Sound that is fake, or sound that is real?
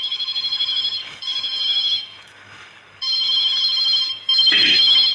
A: fake